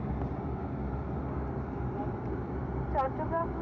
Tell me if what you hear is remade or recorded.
recorded